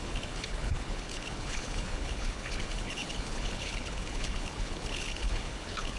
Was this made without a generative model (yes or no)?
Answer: no